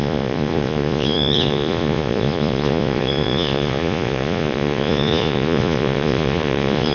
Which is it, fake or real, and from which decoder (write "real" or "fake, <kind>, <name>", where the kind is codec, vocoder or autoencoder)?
fake, vocoder, Vocos